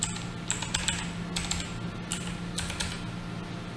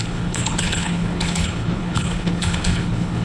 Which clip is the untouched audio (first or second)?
first